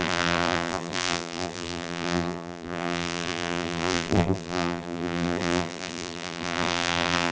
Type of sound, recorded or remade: remade